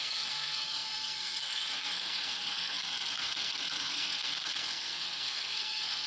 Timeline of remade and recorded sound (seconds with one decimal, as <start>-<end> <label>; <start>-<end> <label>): 0.0-6.1 remade